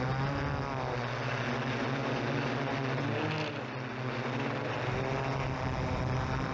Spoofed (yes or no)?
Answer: no